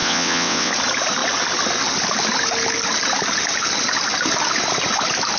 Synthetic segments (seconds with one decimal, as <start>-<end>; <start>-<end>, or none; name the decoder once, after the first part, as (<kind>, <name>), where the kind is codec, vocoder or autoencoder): 0.0-0.7 (vocoder, WaveNeXt)